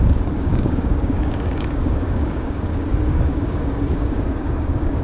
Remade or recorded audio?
remade